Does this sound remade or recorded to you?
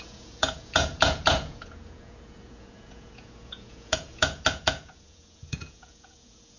remade